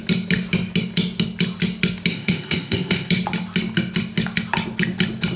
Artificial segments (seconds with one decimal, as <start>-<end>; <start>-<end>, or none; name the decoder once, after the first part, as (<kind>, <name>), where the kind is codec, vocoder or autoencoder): 2.1-3.1 (codec, ZipCodec)